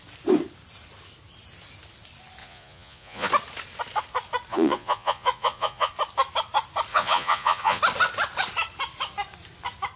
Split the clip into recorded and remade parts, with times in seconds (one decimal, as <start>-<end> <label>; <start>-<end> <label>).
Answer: 0.0-2.4 recorded; 2.4-3.3 remade; 3.3-4.5 recorded; 4.5-5.9 remade; 5.9-6.9 recorded; 6.9-7.8 remade; 7.8-10.0 recorded